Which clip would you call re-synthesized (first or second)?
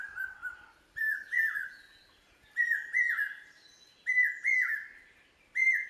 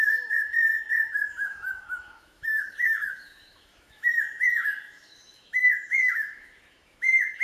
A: second